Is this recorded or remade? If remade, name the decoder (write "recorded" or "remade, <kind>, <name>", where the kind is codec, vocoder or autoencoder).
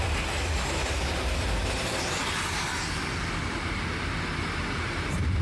recorded